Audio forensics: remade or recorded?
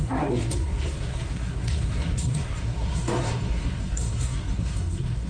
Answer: remade